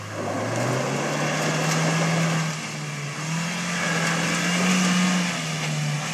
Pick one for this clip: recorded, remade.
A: recorded